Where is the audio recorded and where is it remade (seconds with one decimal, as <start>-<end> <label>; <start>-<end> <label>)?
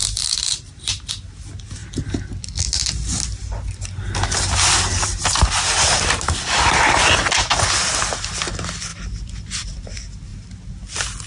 0.0-1.1 remade; 1.1-11.3 recorded